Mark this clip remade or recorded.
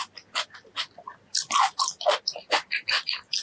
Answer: recorded